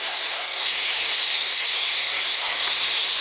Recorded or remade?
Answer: remade